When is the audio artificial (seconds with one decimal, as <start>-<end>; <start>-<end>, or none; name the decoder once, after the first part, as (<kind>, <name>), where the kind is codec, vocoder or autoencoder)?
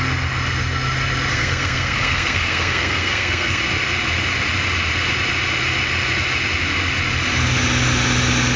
1.3-3.6 (codec, SNAC)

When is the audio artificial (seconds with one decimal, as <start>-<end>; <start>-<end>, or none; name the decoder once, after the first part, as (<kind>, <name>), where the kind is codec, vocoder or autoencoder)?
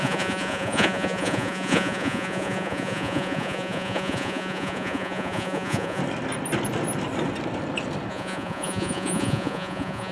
0.0-6.0 (vocoder, Vocos); 8.1-10.1